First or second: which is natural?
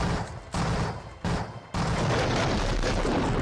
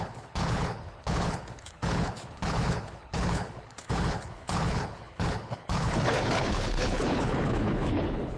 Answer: first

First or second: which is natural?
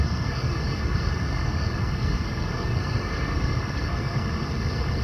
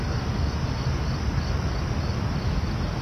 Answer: second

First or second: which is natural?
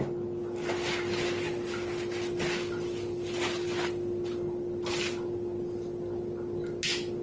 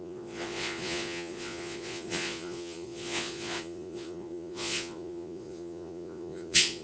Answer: first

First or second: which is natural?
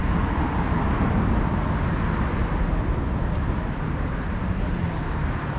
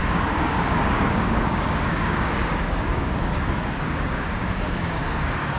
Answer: first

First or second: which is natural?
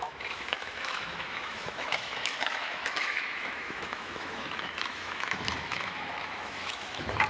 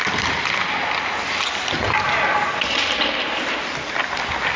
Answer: second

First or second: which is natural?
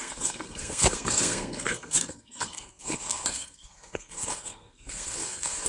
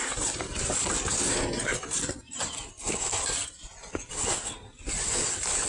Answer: second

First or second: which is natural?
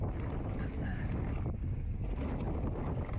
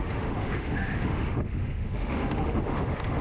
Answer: first